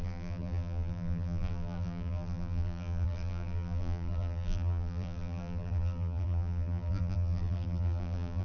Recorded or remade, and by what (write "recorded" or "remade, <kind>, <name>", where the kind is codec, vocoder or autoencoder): remade, vocoder, BigVGAN v2